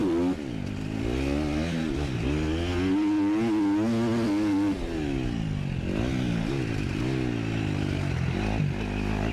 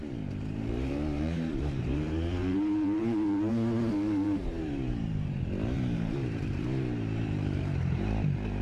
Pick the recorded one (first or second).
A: first